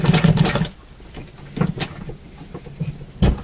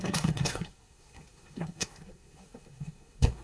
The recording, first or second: first